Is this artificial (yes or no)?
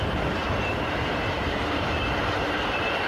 no